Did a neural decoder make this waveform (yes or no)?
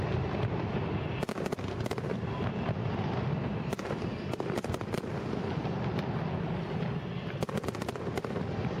no